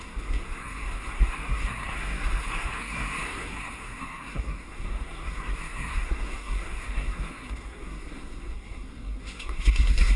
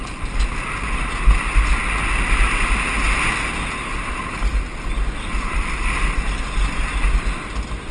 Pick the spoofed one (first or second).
first